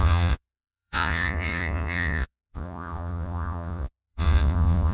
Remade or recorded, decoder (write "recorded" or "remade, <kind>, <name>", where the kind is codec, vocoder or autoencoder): remade, vocoder, Vocos